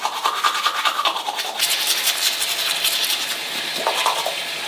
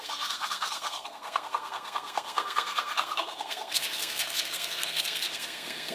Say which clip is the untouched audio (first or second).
first